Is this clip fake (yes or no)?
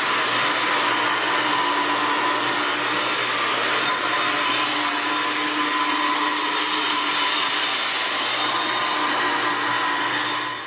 no